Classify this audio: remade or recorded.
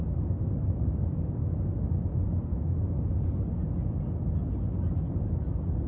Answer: recorded